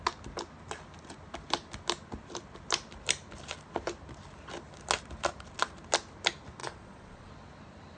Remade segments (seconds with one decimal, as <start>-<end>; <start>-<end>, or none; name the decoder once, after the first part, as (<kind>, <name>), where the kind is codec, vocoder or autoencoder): 6.6-7.3 (vocoder, Vocos)